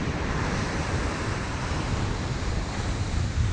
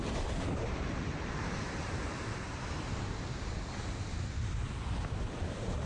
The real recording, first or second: second